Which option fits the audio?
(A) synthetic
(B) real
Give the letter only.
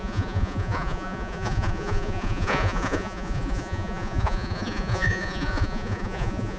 A